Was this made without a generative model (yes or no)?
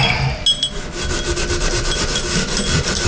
yes